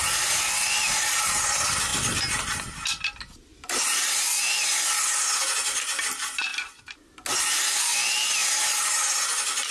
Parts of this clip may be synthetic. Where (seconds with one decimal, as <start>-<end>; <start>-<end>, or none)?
none